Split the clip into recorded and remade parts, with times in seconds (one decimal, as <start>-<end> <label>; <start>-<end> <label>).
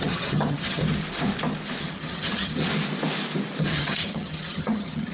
0.0-0.8 remade; 0.8-1.8 recorded; 1.8-2.7 remade; 2.7-3.6 recorded; 3.6-5.1 remade